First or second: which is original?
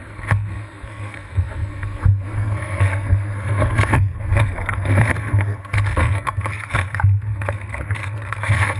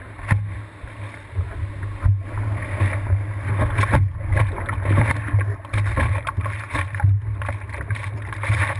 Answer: second